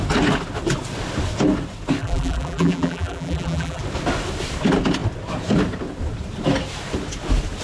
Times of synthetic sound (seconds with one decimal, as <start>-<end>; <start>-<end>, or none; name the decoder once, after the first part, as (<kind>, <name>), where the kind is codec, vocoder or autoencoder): 2.0-3.8 (vocoder, BigVGAN v2)